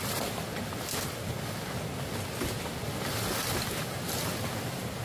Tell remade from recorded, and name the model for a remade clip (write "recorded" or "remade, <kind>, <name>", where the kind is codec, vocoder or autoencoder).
recorded